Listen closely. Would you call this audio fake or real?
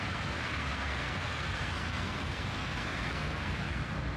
fake